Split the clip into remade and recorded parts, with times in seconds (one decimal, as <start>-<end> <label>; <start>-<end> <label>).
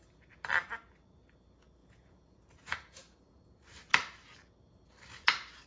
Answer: 0.0-1.8 recorded; 1.8-3.4 remade; 3.4-5.7 recorded